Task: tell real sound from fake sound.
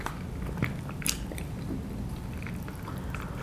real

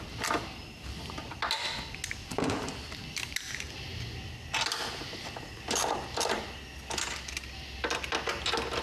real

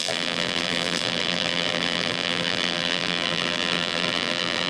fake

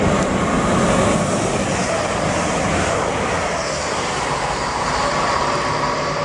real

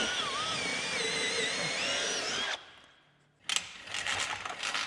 real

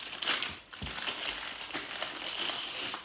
real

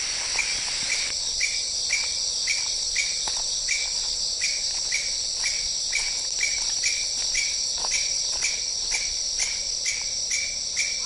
real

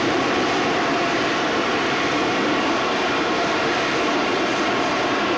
fake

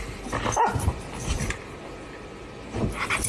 real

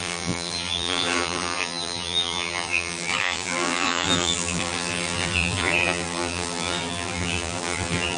fake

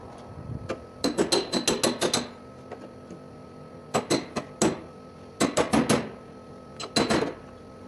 real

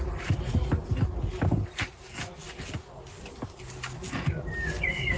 real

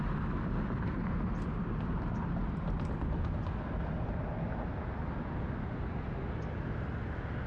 real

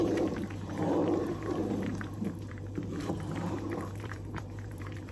fake